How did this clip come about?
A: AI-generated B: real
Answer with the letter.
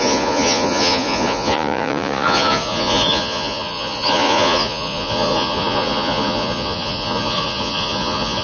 A